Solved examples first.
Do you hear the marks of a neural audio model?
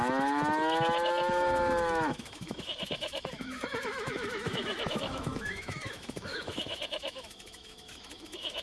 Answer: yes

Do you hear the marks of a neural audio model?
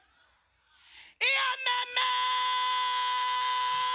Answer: no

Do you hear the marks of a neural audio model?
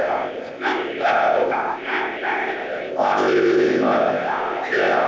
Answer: yes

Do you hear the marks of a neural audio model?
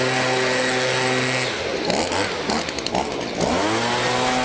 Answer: no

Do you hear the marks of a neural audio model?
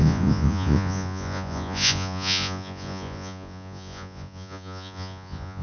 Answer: yes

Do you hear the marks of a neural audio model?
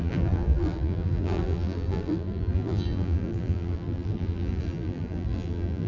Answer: yes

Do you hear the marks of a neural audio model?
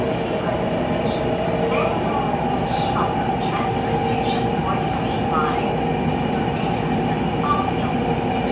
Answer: no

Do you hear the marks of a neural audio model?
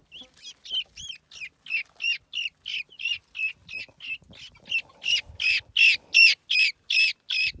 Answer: no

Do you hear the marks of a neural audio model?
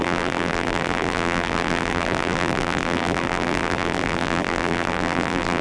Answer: yes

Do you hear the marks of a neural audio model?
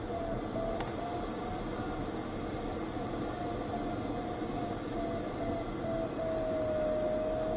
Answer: no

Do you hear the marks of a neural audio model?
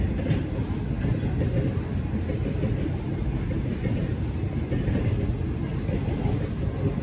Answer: no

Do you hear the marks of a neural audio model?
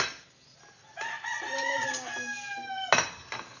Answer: no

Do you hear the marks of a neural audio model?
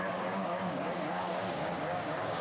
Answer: yes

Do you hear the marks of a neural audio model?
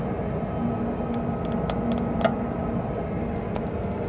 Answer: no